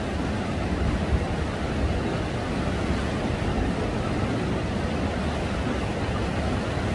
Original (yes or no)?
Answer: yes